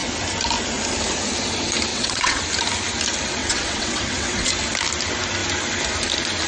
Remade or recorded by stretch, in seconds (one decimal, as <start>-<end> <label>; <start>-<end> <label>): 0.0-1.9 recorded; 1.9-2.4 remade; 2.4-3.4 recorded; 3.4-4.5 remade; 4.5-6.5 recorded